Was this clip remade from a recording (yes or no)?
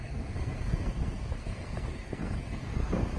yes